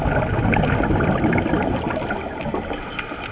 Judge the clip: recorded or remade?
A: recorded